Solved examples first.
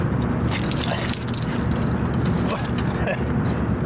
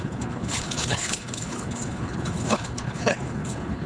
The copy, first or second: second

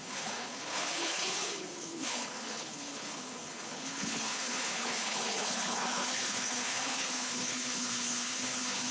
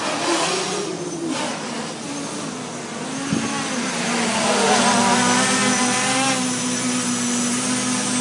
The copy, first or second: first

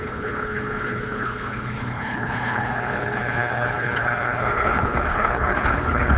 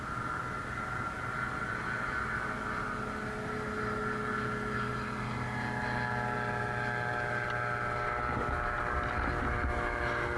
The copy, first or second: first